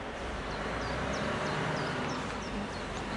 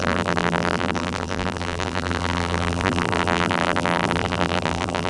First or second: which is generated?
second